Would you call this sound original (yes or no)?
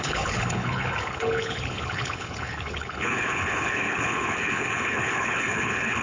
no